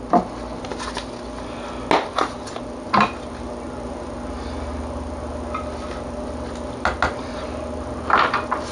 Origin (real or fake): real